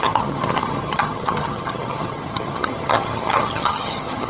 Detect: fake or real fake